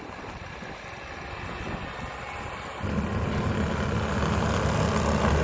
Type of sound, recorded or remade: recorded